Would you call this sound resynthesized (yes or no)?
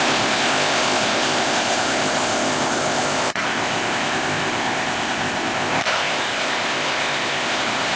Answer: yes